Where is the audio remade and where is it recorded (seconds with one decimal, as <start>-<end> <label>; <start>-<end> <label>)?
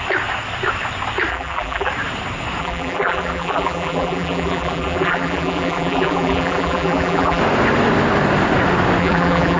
0.0-1.3 recorded; 1.3-1.9 remade; 1.9-2.6 recorded; 2.6-7.4 remade; 7.4-9.0 recorded; 9.0-9.6 remade